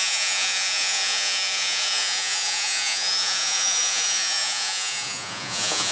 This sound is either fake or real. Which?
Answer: fake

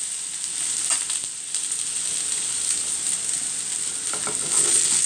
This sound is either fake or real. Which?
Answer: real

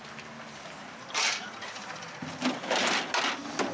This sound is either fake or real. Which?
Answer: real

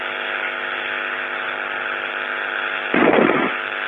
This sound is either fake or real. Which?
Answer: real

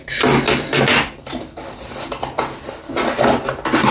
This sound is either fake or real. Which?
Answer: real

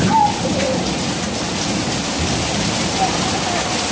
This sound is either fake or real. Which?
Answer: real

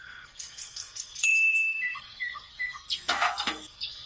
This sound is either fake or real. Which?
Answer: fake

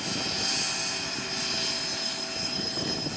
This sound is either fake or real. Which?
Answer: real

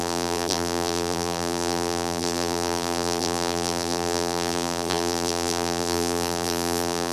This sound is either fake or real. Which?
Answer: fake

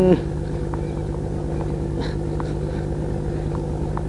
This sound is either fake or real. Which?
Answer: real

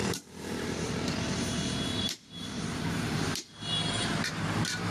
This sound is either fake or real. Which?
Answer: fake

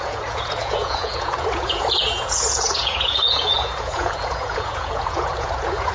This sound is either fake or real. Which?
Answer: fake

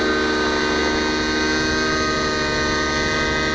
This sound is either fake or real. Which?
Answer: real